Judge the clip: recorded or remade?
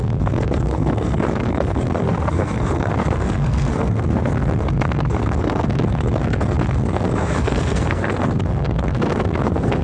remade